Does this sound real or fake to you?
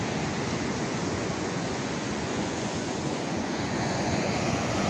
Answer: fake